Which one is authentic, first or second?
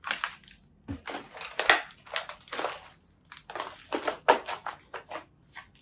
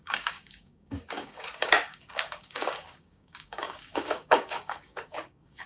first